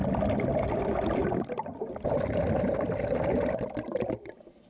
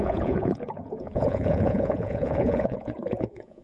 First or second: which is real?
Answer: first